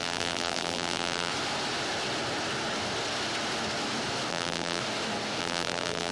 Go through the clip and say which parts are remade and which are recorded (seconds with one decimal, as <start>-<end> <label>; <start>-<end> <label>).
0.0-1.3 remade; 1.3-4.3 recorded; 4.3-4.8 remade; 4.8-5.4 recorded; 5.4-6.1 remade